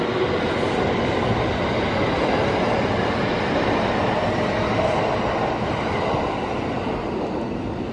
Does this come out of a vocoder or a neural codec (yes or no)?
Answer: no